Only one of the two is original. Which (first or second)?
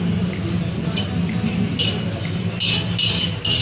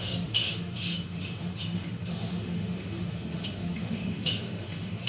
first